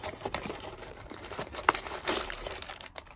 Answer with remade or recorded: remade